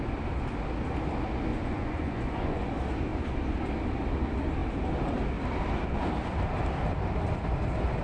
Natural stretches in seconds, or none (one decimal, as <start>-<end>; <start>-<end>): 0.0-1.5; 2.7-8.0